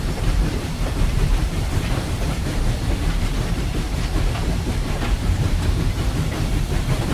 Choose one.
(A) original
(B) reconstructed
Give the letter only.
B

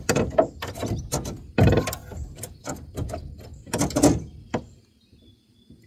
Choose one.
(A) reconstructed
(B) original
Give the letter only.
B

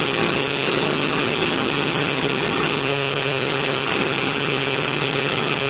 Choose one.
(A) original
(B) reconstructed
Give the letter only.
B